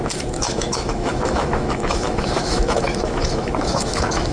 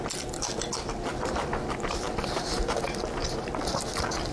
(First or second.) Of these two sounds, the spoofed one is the first